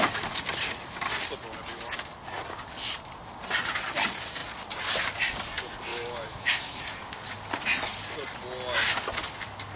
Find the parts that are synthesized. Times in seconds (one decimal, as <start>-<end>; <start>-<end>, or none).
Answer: 5.9-6.8